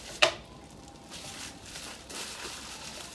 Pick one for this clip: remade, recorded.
remade